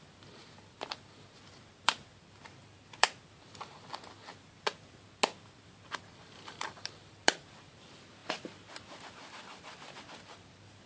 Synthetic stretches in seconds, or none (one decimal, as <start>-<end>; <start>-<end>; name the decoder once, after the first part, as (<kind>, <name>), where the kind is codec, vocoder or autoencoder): 0.0-3.9 (vocoder, BigVGAN v2); 5.4-8.2; 10.0-10.9